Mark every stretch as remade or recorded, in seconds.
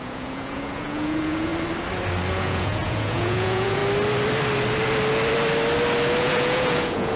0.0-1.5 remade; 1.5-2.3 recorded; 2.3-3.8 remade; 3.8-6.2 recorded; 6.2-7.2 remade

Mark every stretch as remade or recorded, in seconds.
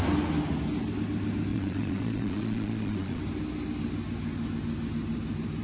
0.0-1.5 recorded; 1.5-3.2 remade; 3.2-5.6 recorded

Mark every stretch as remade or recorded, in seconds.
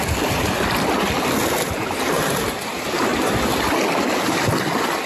0.0-5.1 recorded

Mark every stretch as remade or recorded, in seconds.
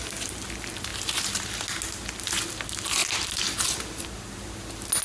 0.0-5.0 recorded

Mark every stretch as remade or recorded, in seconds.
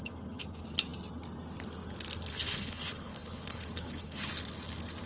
0.0-2.3 recorded; 2.3-4.3 remade; 4.3-5.1 recorded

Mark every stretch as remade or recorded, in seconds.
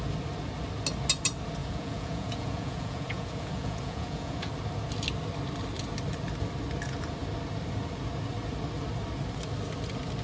0.0-1.6 recorded; 1.6-4.5 remade; 4.5-10.2 recorded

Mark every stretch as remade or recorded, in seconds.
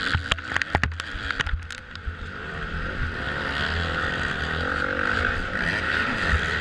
0.0-6.6 recorded